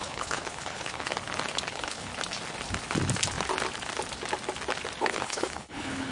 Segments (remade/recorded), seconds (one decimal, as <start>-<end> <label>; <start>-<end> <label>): 0.0-1.1 remade; 1.1-1.7 recorded; 1.7-2.1 remade; 2.1-5.0 recorded; 5.0-6.1 remade